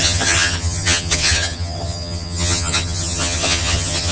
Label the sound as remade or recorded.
remade